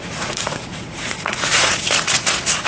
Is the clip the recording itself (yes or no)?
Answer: no